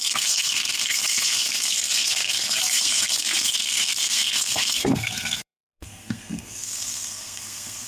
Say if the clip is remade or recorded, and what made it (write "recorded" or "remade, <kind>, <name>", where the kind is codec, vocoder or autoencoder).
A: remade, codec, SNAC